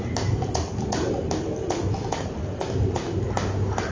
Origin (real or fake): real